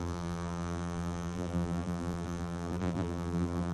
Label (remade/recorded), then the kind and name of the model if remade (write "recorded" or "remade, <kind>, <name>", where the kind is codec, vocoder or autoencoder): remade, vocoder, BigVGAN v2